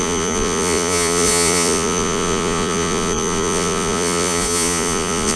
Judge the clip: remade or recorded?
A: remade